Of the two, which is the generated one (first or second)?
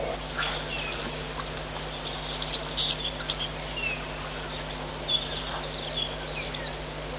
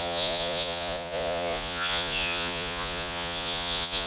second